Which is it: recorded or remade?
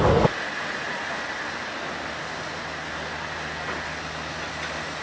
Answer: recorded